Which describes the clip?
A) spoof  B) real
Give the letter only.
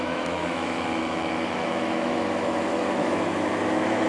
A